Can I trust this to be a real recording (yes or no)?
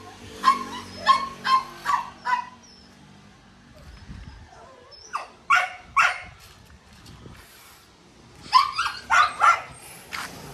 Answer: yes